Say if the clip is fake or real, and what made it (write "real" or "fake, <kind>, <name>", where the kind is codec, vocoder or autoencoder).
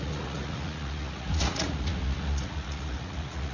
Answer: fake, vocoder, Vocos